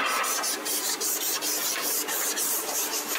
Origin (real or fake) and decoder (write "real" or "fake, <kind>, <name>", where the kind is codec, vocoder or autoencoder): real